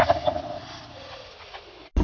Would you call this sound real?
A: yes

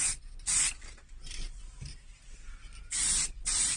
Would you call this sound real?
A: no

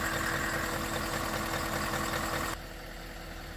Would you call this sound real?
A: yes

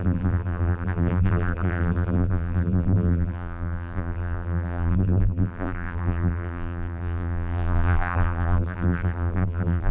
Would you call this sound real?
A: no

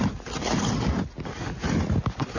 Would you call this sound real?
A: yes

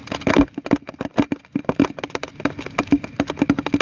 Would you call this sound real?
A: yes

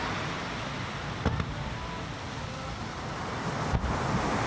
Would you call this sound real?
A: yes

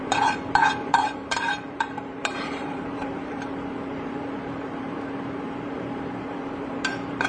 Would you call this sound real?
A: no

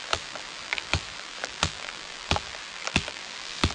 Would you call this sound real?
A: no